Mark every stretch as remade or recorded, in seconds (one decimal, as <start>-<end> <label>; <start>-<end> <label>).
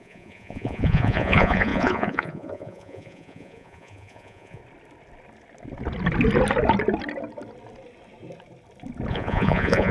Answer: 0.0-4.6 remade; 4.6-9.1 recorded; 9.1-9.9 remade